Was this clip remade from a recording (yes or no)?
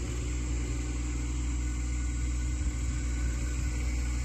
no